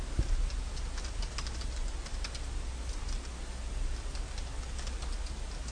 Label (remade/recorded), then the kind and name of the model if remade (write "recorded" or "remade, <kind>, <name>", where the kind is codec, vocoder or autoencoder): recorded